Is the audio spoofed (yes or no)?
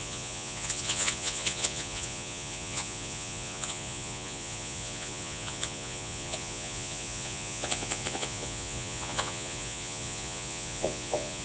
yes